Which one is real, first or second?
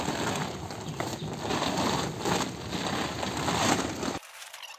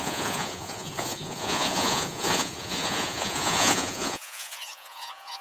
first